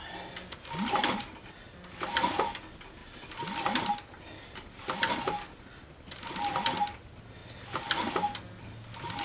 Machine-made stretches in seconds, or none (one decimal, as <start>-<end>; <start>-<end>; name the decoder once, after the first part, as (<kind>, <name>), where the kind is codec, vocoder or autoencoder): none